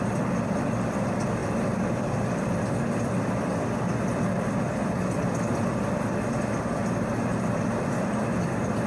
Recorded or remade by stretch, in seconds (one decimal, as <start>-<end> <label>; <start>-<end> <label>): 0.0-8.9 remade